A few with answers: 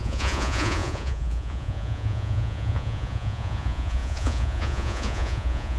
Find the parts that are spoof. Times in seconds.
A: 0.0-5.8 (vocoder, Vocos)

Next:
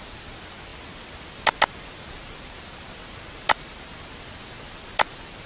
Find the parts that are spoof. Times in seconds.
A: none

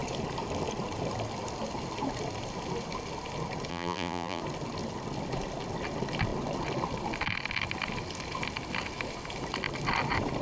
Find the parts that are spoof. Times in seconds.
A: 3.7-4.4 (vocoder, BigVGAN v2)